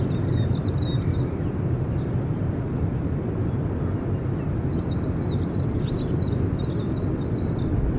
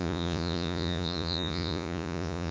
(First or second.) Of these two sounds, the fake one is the second